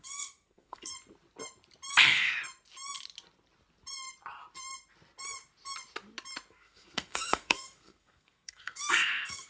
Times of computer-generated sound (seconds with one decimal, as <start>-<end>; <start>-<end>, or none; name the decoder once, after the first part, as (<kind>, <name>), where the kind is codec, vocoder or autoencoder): 0.0-0.9 (codec, SNAC); 1.9-2.3; 6.5-9.5